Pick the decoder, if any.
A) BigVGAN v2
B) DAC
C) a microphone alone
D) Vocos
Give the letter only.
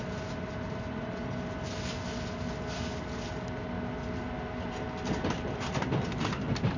C